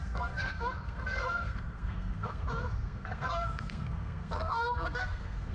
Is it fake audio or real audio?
fake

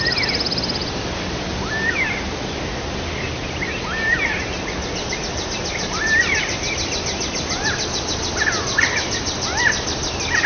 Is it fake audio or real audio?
real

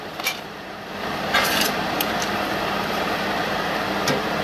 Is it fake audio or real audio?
fake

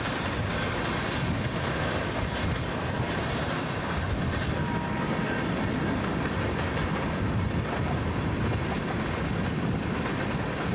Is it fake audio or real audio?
real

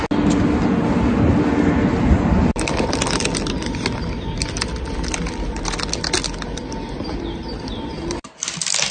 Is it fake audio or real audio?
real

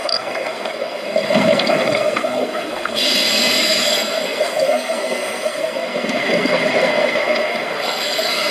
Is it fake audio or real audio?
fake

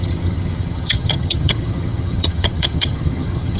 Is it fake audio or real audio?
fake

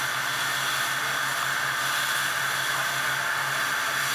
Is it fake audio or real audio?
real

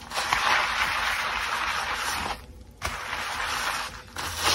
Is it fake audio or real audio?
real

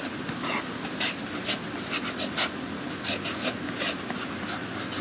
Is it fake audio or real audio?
real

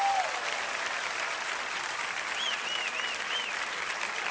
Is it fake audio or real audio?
real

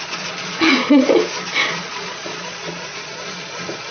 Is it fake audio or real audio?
fake